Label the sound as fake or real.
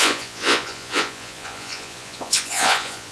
fake